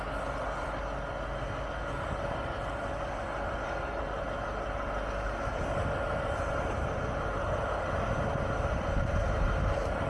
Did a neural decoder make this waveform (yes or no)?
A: no